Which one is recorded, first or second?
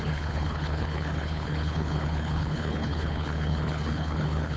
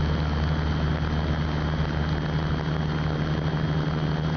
second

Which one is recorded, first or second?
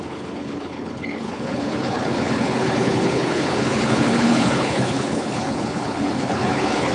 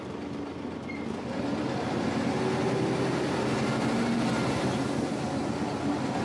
second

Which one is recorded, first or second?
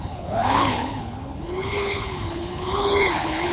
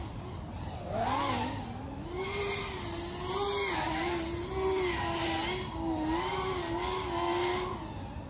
second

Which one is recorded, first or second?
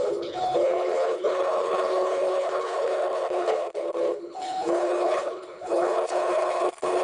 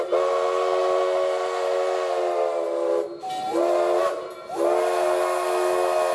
second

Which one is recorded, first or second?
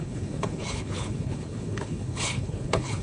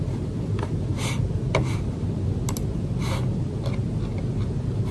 second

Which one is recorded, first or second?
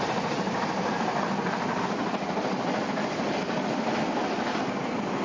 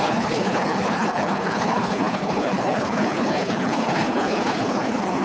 first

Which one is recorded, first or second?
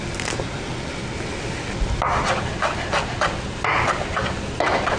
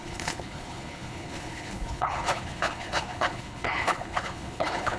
first